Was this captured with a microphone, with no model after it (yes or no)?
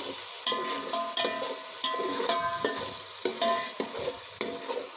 yes